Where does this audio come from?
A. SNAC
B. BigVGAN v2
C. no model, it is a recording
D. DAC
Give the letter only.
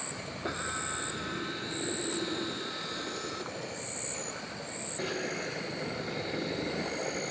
C